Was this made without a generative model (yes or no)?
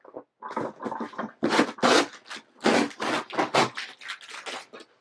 yes